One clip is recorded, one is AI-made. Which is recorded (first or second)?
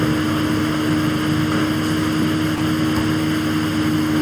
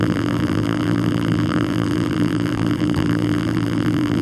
first